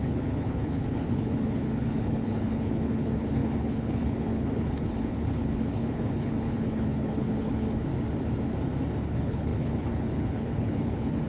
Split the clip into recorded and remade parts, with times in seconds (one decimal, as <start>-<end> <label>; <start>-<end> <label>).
0.0-7.9 remade; 7.9-9.0 recorded; 9.0-11.3 remade